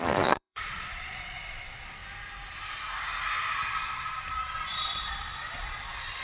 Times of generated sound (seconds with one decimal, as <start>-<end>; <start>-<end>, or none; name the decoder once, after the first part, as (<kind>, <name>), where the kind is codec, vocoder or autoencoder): 0.0-2.0 (vocoder, Vocos); 3.7-6.2